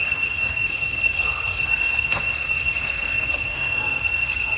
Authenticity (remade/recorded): remade